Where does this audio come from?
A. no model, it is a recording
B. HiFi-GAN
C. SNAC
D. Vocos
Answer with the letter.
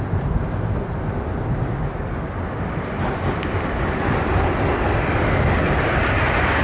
A